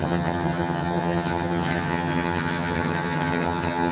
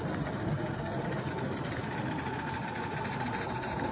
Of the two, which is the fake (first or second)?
first